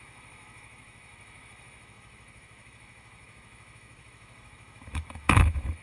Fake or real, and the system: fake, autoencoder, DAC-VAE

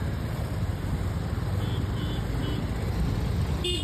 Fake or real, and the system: real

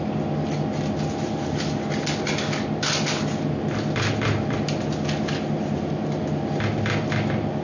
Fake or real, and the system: real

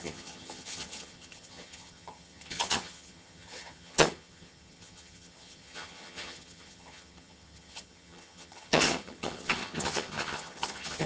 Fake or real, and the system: fake, vocoder, HiFi-GAN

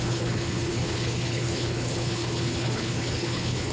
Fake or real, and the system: fake, codec, HILCodec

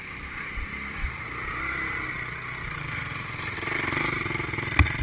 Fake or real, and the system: real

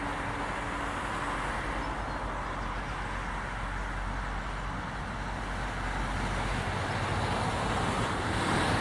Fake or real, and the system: real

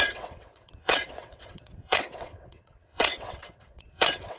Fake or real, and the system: fake, vocoder, WaveNeXt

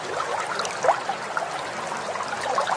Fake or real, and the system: real